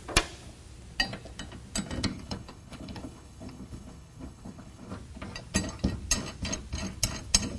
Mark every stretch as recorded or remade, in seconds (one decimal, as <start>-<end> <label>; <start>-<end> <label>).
0.0-2.1 recorded; 2.1-4.9 remade; 4.9-7.6 recorded